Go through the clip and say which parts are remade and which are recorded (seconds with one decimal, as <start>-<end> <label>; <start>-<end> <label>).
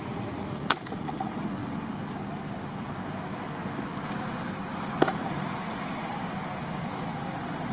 0.0-1.6 remade; 1.6-5.1 recorded; 5.1-6.1 remade; 6.1-7.7 recorded